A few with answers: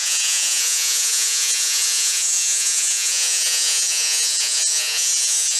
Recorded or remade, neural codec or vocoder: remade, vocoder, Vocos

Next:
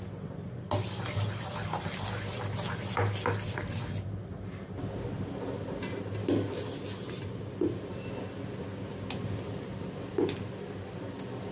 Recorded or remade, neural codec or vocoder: recorded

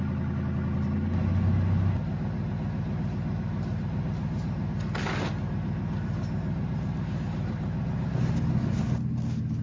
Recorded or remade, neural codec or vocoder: recorded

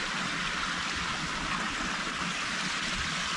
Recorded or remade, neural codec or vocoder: recorded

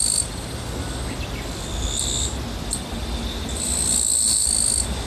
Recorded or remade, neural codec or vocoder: recorded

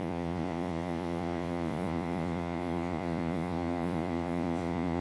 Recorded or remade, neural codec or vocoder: remade, vocoder, Vocos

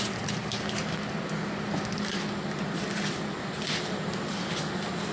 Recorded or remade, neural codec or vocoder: recorded